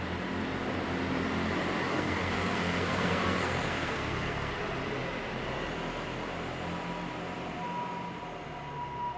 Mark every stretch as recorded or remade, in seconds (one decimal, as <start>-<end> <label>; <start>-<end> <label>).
0.0-1.9 recorded; 1.9-4.6 remade; 4.6-9.2 recorded